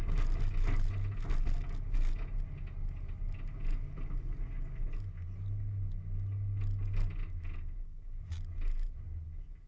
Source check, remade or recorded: recorded